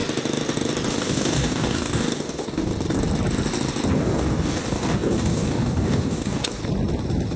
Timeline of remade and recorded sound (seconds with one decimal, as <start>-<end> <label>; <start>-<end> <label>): 0.0-0.9 recorded; 0.9-2.7 remade; 2.7-3.9 recorded; 3.9-6.6 remade; 6.6-7.4 recorded